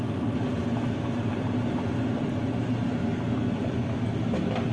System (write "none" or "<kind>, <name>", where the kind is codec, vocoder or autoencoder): none